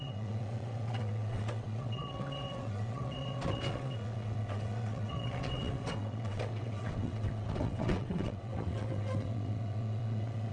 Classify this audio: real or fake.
fake